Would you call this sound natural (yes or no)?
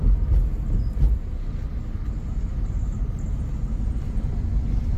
yes